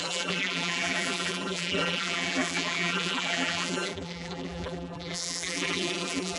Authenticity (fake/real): fake